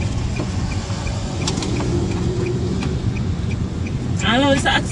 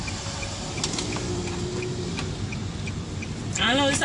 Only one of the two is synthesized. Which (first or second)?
first